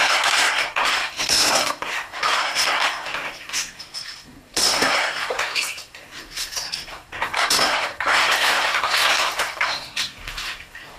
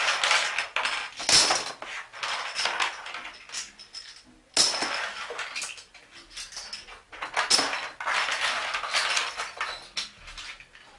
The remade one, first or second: first